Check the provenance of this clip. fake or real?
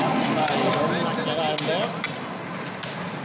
real